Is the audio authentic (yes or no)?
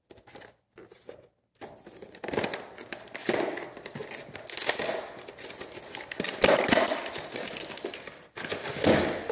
yes